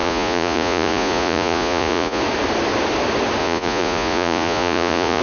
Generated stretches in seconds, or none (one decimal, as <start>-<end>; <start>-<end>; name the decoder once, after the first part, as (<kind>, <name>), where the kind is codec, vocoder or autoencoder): 0.0-2.2 (vocoder, Vocos); 3.4-5.2